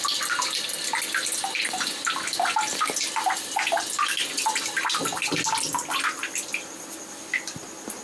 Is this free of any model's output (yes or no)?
yes